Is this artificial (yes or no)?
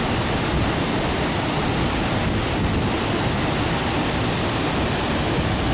no